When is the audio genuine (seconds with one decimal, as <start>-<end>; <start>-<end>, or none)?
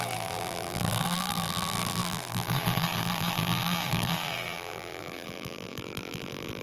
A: none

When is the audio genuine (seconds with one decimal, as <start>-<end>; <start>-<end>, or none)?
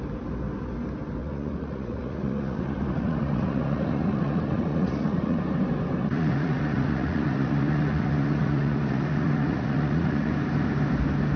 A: 0.0-1.2; 5.4-6.0; 10.3-11.4